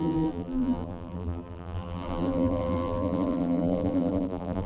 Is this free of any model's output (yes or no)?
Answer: no